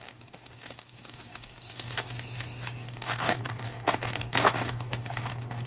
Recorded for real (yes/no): no